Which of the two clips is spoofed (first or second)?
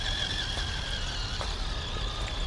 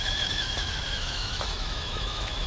second